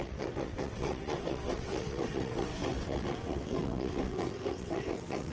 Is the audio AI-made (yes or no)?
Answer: yes